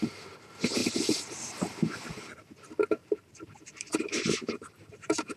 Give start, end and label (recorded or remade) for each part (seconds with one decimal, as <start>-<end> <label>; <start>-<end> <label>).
0.0-3.0 recorded; 3.0-5.4 remade